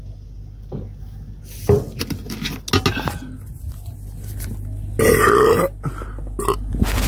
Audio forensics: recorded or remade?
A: recorded